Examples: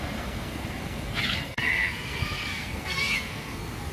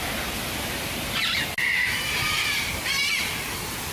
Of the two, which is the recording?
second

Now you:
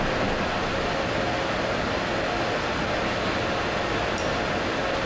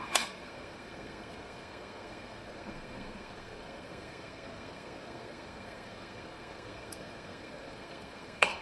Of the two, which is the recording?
first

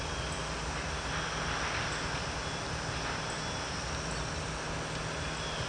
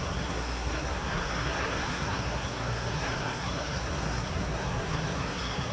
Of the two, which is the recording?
first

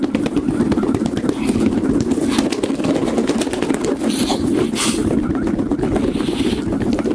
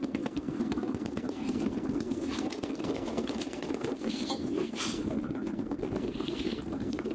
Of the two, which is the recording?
first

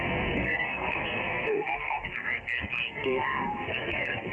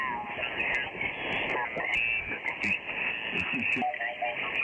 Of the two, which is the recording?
second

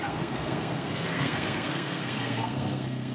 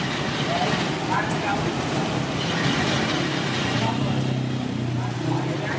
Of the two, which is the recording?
second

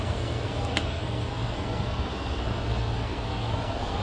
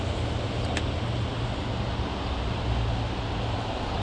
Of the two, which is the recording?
second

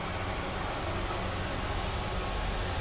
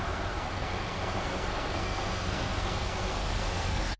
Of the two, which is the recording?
first